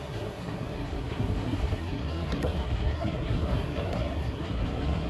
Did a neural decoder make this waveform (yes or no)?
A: yes